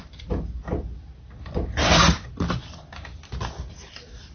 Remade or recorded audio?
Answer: recorded